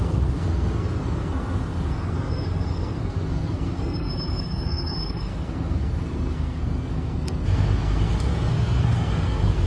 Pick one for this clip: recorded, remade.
remade